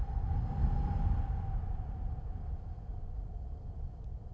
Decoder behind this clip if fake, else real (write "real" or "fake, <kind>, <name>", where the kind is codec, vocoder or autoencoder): real